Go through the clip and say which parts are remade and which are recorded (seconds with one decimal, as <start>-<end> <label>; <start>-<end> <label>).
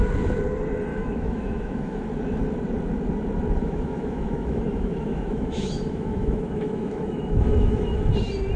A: 0.0-0.9 recorded; 0.9-2.1 remade; 2.1-3.6 recorded; 3.6-8.1 remade; 8.1-8.6 recorded